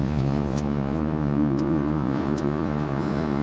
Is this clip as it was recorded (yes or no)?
no